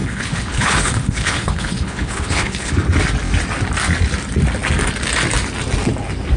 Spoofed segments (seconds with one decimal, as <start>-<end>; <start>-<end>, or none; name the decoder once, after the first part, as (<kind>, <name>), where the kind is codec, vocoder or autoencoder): 0.0-2.7 (codec, HILCodec)